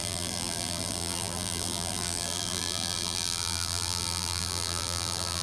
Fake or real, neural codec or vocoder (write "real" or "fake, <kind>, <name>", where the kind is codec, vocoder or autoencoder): fake, vocoder, BigVGAN v2